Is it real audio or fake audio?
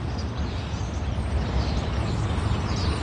real